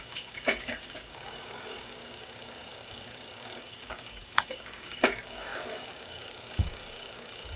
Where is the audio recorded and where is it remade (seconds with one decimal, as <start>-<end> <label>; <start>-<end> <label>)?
0.0-7.6 remade